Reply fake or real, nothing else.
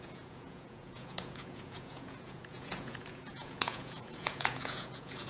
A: fake